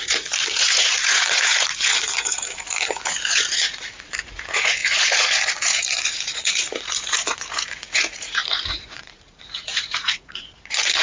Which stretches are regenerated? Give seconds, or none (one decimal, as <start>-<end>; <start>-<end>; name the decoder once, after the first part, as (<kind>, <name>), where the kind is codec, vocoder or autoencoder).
0.0-11.0 (vocoder, Vocos)